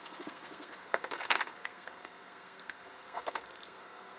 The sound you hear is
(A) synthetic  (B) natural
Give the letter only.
A